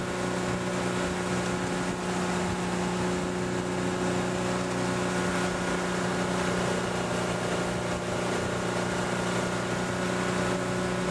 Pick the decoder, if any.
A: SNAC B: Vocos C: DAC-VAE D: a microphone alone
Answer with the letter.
D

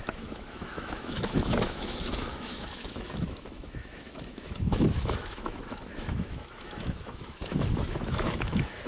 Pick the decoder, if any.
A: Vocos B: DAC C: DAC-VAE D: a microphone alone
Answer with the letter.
C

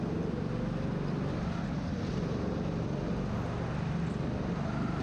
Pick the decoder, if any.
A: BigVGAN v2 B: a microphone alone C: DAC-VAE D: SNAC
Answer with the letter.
B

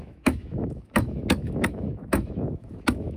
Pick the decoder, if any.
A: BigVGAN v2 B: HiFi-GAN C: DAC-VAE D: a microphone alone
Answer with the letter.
C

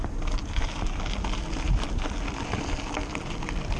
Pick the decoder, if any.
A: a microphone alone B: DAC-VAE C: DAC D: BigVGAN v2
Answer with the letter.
A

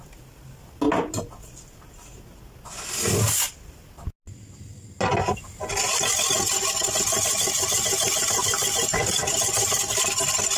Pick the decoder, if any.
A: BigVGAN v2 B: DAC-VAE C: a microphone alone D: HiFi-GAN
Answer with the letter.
C